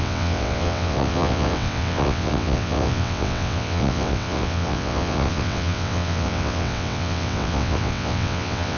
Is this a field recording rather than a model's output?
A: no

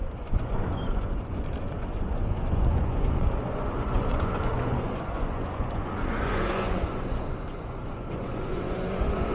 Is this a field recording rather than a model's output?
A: no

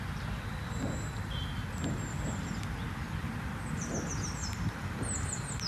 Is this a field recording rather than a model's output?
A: yes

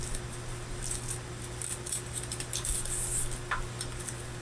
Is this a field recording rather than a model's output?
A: yes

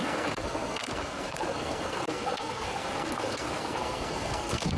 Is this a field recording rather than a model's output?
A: no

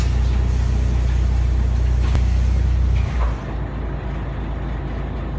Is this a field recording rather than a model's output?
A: yes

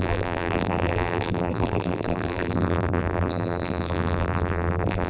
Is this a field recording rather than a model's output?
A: no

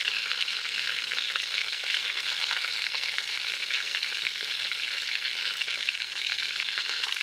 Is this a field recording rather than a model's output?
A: no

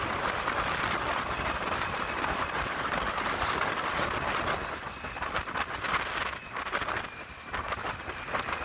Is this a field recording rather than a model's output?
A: yes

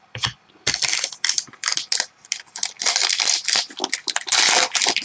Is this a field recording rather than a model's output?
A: yes